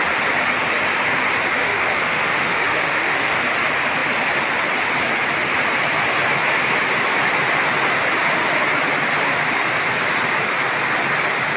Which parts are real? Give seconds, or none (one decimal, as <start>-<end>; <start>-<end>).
0.0-1.6; 3.4-11.6